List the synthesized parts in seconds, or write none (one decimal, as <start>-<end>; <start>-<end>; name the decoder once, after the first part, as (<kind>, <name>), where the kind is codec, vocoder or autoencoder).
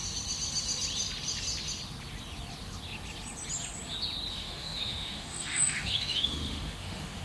4.3-7.2 (autoencoder, DAC-VAE)